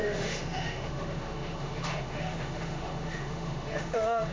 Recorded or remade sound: remade